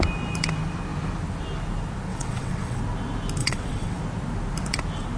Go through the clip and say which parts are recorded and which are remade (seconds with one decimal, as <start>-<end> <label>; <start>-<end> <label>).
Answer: 0.0-2.1 recorded; 2.1-2.8 remade; 2.8-3.4 recorded; 3.4-4.0 remade; 4.0-5.2 recorded